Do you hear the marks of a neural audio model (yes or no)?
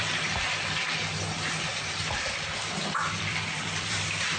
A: yes